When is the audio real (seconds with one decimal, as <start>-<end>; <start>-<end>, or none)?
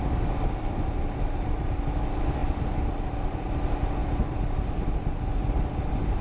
0.0-6.2